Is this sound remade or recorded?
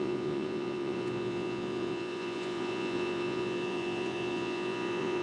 remade